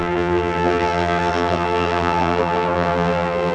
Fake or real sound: fake